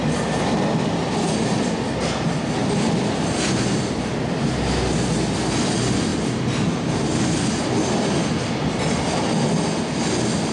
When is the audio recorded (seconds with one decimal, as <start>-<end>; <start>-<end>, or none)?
0.0-6.1; 7.2-10.5